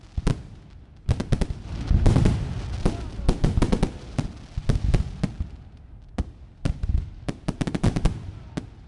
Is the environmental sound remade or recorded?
recorded